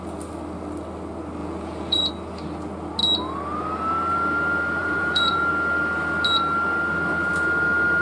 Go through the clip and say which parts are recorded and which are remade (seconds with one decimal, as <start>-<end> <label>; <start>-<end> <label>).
0.0-1.4 recorded; 1.4-2.1 remade; 2.1-4.8 recorded; 4.8-5.5 remade; 5.5-8.0 recorded